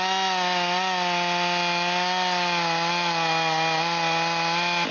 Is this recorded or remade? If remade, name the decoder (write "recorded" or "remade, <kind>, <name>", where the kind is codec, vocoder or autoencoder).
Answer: recorded